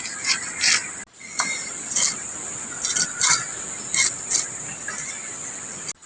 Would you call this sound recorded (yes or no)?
yes